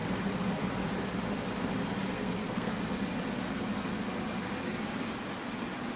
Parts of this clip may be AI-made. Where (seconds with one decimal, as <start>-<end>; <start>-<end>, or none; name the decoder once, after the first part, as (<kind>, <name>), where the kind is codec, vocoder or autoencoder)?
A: 2.1-2.7 (codec, SNAC)